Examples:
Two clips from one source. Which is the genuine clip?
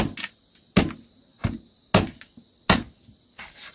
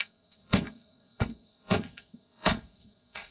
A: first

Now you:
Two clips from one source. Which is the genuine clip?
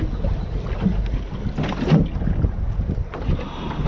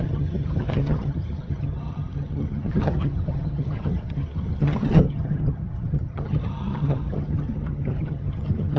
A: first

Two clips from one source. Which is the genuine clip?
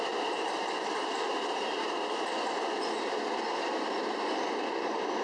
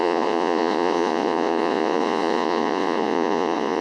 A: first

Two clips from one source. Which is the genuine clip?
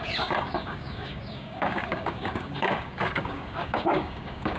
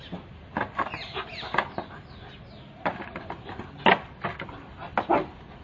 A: second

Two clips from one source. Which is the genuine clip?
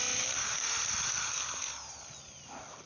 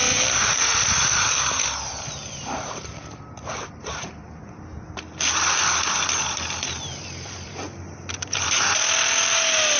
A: first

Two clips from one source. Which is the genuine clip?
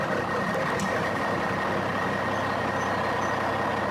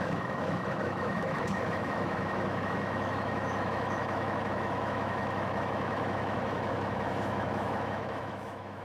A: first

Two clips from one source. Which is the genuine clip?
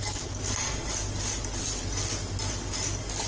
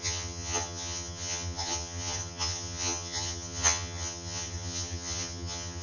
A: first